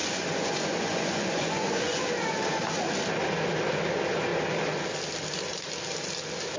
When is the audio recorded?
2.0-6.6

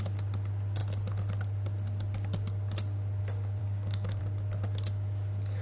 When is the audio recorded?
0.0-3.6; 4.2-5.6